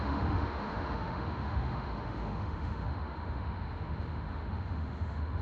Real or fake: fake